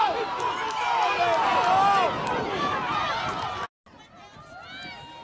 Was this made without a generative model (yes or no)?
yes